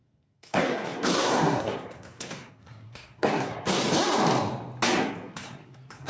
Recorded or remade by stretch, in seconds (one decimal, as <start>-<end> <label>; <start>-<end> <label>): 0.0-3.8 remade; 3.8-5.0 recorded; 5.0-6.1 remade